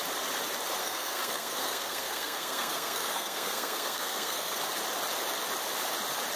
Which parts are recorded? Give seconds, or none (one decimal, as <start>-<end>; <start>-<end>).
0.0-0.8; 4.6-6.4